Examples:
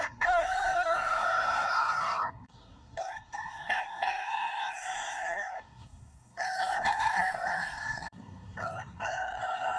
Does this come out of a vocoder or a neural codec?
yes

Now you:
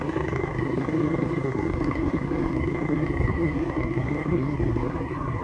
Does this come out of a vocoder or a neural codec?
yes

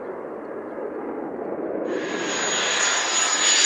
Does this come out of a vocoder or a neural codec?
no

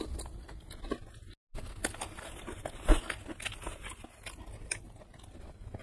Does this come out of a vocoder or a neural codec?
no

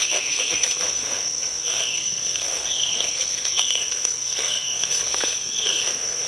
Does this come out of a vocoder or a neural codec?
yes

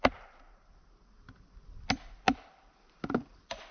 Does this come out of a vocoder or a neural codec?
no